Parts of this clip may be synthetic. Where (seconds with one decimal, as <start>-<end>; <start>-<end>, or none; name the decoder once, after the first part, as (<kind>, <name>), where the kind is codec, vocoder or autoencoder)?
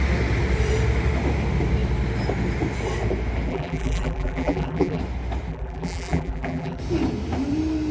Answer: 3.5-5.0 (vocoder, BigVGAN v2); 5.5-6.8